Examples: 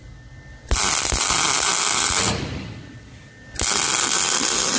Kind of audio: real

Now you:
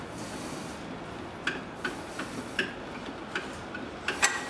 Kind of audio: real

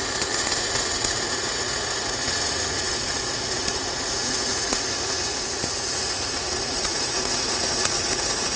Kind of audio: fake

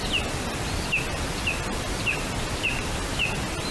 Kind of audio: real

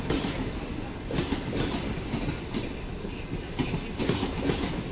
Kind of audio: real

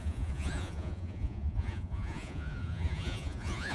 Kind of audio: fake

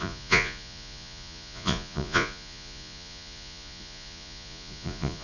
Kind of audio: fake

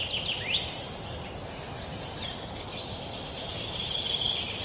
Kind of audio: real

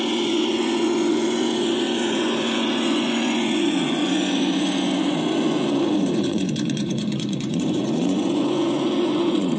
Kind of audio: fake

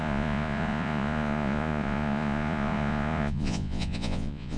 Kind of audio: fake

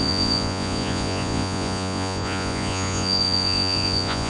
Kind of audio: fake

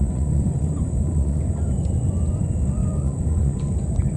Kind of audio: fake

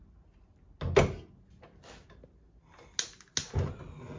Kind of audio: real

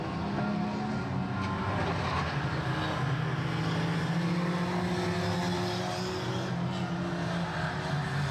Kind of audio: real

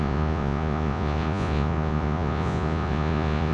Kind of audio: fake